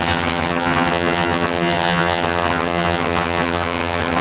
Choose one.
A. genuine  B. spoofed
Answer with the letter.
B